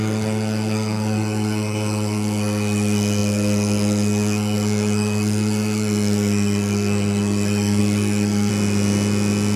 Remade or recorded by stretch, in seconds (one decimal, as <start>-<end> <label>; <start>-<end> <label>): 0.0-8.5 remade; 8.5-9.6 recorded